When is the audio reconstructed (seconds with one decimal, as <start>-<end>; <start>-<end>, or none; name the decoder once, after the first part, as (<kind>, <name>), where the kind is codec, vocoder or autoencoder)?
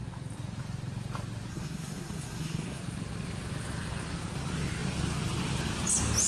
1.5-2.8 (codec, SNAC)